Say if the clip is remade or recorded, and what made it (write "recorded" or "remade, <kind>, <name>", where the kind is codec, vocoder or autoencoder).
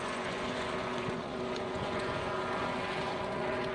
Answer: remade, vocoder, Vocos